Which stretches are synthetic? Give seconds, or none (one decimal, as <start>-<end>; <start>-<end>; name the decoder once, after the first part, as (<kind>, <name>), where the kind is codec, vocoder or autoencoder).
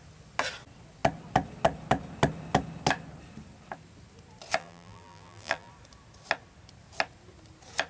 4.6-5.7 (vocoder, BigVGAN v2)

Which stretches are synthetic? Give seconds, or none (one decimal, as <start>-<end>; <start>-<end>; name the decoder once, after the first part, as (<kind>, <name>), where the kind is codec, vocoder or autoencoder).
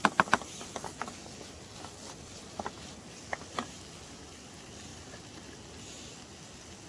none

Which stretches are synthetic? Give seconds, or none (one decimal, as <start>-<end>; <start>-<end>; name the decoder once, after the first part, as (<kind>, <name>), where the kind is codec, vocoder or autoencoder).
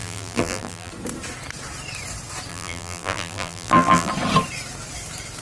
0.0-0.9 (vocoder, BigVGAN v2); 2.5-4.1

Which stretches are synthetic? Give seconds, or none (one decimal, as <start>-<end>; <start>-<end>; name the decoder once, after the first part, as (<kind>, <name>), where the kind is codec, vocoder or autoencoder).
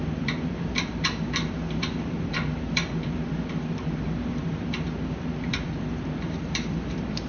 0.0-7.3 (vocoder, BigVGAN v2)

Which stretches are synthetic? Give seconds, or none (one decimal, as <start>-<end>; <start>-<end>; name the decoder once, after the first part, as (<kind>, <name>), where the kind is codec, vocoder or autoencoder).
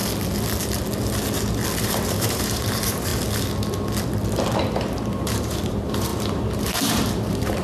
1.8-3.1 (vocoder, BigVGAN v2); 4.6-7.6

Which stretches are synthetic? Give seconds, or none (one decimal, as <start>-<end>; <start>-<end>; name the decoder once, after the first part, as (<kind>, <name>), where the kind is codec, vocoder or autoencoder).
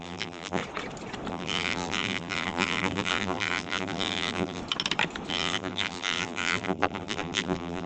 0.0-0.6 (vocoder, BigVGAN v2); 1.3-4.6; 5.3-7.9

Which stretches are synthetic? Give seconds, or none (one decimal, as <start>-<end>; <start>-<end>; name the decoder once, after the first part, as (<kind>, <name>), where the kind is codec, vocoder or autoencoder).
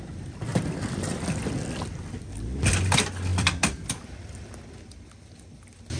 0.5-1.5 (vocoder, BigVGAN v2); 3.3-4.5